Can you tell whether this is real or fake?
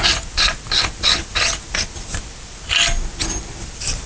real